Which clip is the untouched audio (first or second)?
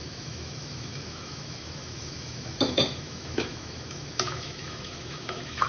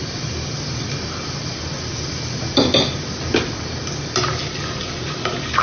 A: second